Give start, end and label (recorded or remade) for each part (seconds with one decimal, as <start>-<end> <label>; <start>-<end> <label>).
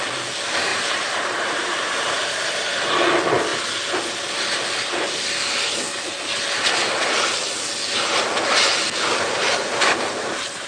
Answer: 0.0-0.7 recorded; 0.7-2.9 remade; 2.9-10.7 recorded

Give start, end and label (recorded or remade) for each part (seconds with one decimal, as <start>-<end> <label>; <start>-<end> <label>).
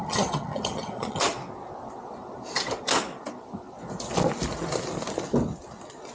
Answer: 0.0-1.2 remade; 1.2-6.1 recorded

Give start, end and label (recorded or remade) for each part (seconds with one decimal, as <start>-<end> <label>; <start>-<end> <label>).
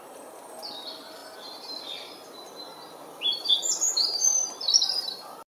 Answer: 0.0-3.3 recorded; 3.3-5.6 remade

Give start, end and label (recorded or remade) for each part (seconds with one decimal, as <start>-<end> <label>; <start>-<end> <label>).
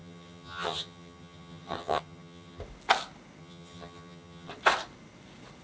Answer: 0.0-2.6 remade; 2.6-3.4 recorded; 3.4-4.5 remade; 4.5-5.6 recorded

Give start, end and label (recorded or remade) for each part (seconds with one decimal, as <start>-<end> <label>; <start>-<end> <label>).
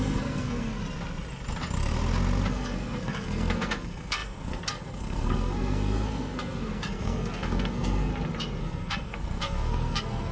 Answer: 0.0-0.8 remade; 0.8-2.5 recorded; 2.5-8.1 remade; 8.1-8.6 recorded; 8.6-10.3 remade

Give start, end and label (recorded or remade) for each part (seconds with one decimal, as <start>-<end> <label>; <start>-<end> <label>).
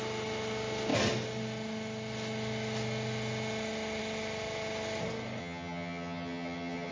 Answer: 0.0-5.4 recorded; 5.4-6.9 remade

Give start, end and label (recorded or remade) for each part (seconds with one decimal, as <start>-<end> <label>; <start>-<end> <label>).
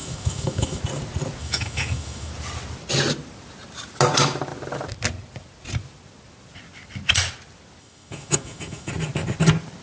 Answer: 0.0-0.8 remade; 0.8-1.4 recorded; 1.4-2.3 remade; 2.3-7.8 recorded; 7.8-8.9 remade; 8.9-9.8 recorded